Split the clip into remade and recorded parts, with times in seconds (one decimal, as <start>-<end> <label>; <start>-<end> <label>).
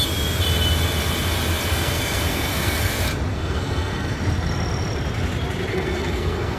0.0-1.7 recorded; 1.7-2.9 remade; 2.9-3.3 recorded; 3.3-4.2 remade; 4.2-5.7 recorded; 5.7-6.6 remade